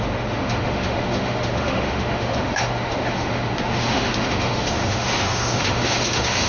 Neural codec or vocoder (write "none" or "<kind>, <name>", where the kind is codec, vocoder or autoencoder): autoencoder, DAC-VAE